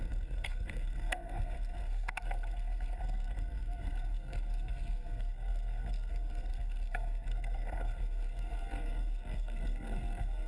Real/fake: fake